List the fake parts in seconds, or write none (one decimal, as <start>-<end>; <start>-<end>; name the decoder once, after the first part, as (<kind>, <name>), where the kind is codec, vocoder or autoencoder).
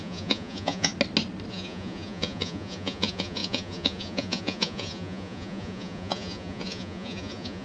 0.0-0.9 (vocoder, Vocos); 1.5-7.6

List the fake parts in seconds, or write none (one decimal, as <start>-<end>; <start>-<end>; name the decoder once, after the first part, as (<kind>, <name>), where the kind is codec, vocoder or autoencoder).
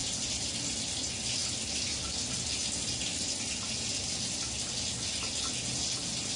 none